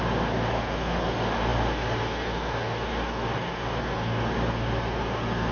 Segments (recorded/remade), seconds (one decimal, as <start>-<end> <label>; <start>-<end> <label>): 0.0-5.5 recorded